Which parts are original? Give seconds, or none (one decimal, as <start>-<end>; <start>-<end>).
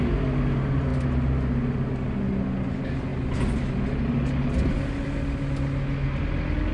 0.0-6.7